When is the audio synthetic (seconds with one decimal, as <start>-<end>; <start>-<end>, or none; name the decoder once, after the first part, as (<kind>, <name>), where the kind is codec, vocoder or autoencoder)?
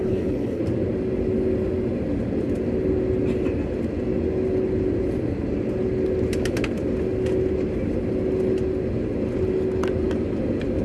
0.0-0.6 (codec, HILCodec)